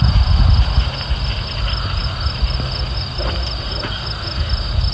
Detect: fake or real real